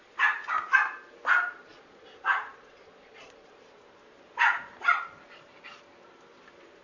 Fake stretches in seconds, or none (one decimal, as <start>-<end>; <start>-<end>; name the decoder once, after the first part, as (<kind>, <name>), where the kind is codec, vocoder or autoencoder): 1.7-3.5 (vocoder, Vocos)